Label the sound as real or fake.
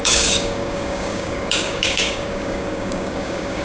fake